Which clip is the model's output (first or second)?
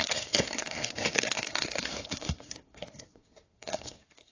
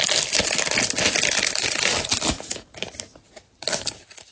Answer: first